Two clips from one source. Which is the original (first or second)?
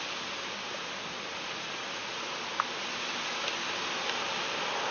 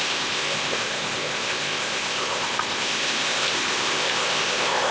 first